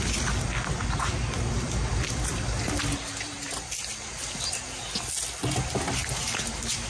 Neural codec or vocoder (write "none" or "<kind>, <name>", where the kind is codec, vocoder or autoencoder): none